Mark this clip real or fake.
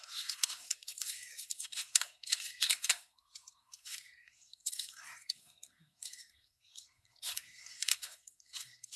fake